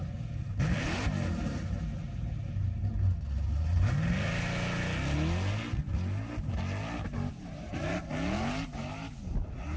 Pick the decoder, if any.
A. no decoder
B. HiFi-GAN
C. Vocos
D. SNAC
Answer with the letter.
A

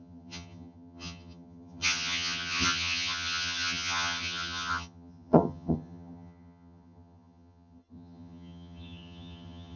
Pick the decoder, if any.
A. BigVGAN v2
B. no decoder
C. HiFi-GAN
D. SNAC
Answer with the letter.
C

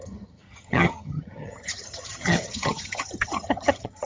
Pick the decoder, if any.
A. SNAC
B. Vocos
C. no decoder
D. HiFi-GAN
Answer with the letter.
D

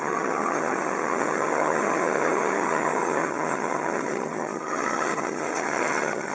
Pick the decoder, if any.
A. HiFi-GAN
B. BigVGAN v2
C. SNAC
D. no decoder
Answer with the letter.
A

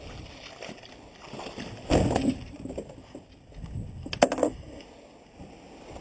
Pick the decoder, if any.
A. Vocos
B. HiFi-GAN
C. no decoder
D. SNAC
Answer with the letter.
C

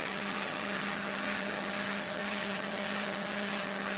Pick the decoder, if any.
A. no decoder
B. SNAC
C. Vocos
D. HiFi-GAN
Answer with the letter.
D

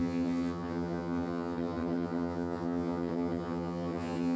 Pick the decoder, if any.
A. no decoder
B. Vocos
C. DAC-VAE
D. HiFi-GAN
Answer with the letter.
D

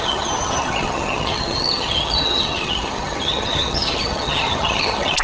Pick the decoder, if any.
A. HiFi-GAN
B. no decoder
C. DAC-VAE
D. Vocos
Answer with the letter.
A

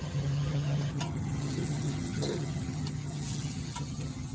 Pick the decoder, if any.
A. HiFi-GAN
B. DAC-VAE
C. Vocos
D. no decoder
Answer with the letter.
A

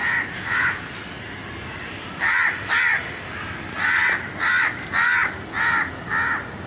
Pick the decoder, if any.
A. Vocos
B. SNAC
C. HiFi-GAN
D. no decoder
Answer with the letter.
D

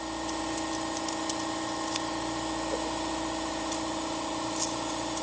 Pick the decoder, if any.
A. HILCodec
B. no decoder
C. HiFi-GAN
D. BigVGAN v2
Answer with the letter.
B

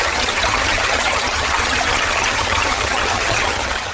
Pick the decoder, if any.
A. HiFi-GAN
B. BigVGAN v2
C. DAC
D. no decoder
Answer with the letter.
A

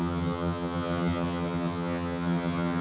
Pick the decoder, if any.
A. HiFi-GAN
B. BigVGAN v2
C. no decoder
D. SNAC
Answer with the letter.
A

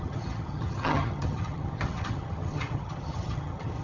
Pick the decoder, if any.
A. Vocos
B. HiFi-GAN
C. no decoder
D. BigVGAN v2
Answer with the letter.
B